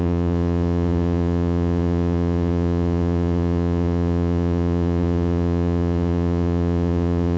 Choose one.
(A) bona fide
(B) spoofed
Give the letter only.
B